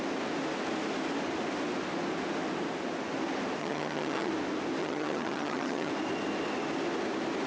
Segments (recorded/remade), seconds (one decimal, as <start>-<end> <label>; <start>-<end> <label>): 0.0-3.6 recorded; 3.6-4.3 remade; 4.3-4.8 recorded; 4.8-5.9 remade; 5.9-7.5 recorded